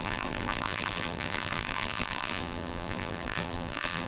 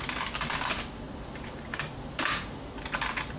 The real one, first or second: second